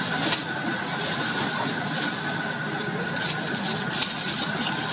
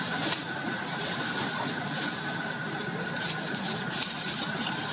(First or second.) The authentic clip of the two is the first